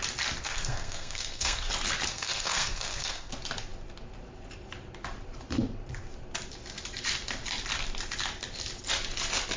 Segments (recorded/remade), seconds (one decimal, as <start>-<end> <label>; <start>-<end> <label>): 0.0-0.4 recorded; 0.4-1.7 remade; 1.7-2.1 recorded; 2.1-3.3 remade; 3.3-9.6 recorded